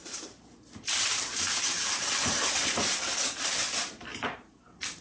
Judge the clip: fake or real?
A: fake